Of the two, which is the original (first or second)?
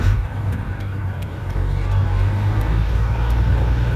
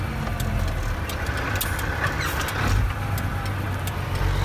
second